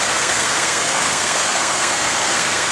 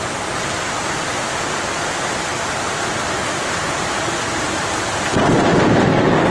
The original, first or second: second